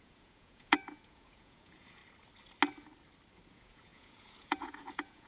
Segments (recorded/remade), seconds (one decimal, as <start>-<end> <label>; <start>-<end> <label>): 0.0-2.0 remade; 2.0-3.5 recorded; 3.5-5.3 remade